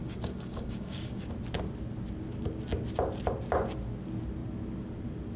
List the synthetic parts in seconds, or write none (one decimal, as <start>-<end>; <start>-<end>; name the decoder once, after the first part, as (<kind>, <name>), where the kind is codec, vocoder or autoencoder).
0.0-1.2 (codec, DAC)